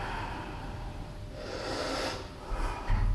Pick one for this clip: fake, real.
real